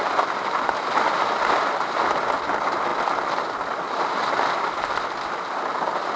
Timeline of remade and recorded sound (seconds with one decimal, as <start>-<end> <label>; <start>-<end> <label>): 0.0-6.2 recorded